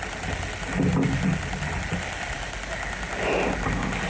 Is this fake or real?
real